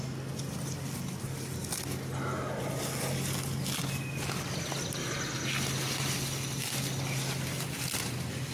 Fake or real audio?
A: real